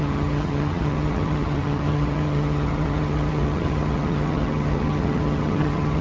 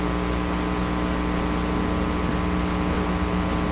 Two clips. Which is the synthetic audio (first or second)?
first